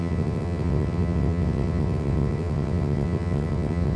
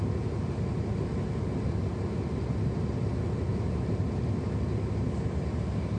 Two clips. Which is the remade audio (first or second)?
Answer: first